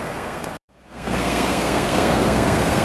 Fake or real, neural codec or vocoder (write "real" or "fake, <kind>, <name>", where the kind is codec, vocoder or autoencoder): fake, codec, SNAC